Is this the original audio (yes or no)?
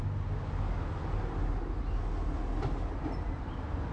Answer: yes